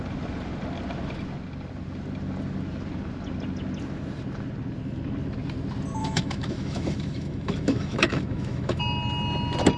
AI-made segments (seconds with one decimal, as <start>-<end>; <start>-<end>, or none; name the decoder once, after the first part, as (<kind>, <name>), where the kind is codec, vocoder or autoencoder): 6.0-8.8 (autoencoder, DAC-VAE)